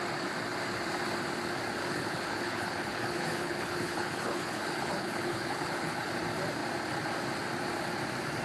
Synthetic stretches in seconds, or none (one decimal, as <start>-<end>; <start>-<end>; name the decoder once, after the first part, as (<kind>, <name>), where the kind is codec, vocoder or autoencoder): 1.8-6.1 (codec, HILCodec)